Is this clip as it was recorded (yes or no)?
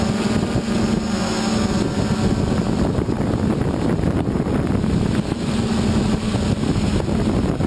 yes